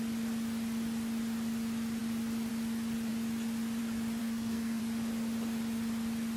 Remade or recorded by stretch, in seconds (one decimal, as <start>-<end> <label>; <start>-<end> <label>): 0.0-4.2 recorded; 4.2-4.8 remade; 4.8-6.4 recorded